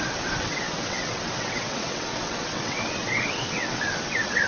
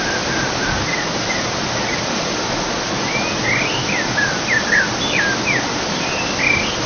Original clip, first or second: second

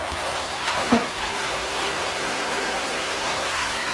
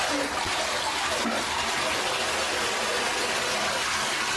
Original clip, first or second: second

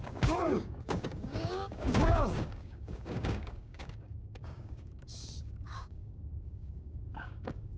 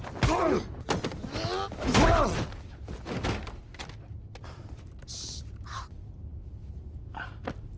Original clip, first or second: second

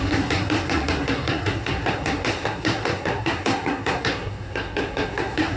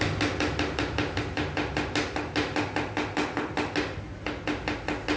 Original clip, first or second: second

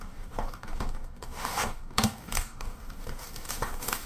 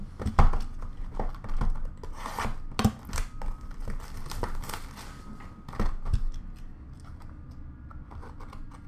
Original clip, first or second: second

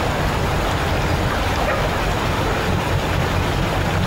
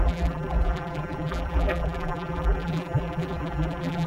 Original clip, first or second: first